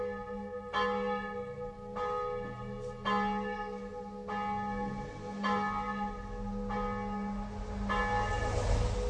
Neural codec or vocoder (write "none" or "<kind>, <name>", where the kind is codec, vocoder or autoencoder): none